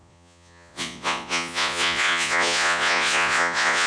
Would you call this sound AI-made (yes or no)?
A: yes